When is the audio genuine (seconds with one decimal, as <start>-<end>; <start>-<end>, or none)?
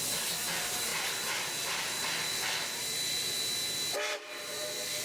0.0-5.0